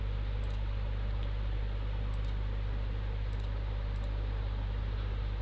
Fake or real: real